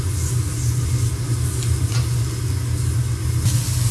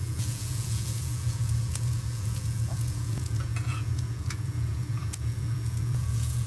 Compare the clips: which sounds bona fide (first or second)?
first